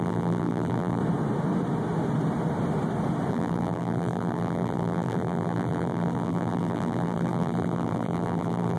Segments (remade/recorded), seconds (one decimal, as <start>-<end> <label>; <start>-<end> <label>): 0.0-1.0 remade; 1.0-3.3 recorded; 3.3-8.8 remade